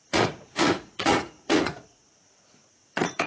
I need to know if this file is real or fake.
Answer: fake